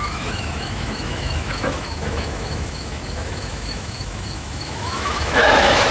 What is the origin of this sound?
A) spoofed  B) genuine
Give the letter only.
A